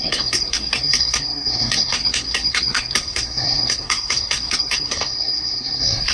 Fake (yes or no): yes